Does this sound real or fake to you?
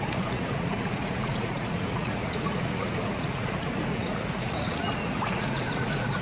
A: fake